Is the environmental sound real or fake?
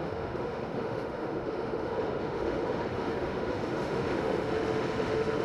fake